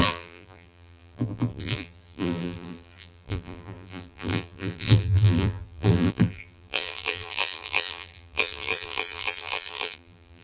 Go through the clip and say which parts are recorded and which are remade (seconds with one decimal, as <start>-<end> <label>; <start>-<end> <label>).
0.0-10.4 remade